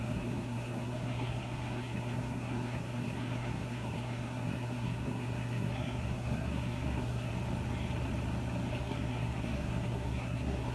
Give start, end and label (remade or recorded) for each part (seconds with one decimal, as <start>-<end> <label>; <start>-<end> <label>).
0.0-7.3 remade; 7.3-8.8 recorded; 8.8-10.7 remade